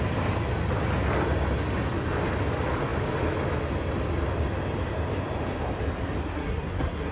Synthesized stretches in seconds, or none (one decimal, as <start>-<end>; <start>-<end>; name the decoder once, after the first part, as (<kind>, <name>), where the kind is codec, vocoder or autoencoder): 6.2-7.1 (codec, SNAC)